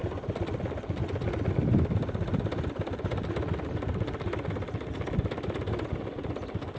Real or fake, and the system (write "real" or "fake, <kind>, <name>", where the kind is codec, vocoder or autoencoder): real